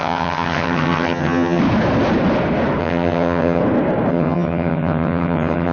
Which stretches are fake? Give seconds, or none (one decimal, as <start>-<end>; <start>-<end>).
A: 0.0-1.6; 2.8-3.6; 4.1-5.7